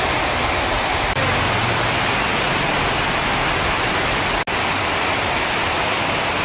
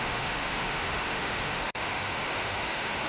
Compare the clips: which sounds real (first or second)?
first